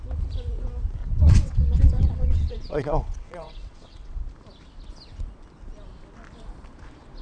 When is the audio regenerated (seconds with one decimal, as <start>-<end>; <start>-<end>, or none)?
1.0-4.2